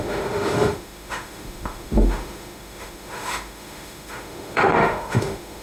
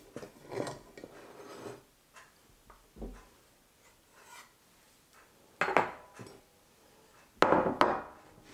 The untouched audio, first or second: second